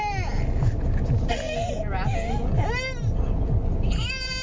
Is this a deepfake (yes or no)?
no